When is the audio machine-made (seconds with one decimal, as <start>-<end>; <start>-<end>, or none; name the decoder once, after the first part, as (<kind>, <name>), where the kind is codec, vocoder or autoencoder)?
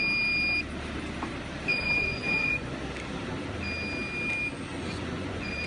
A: 1.7-2.7 (vocoder, Vocos); 4.7-5.7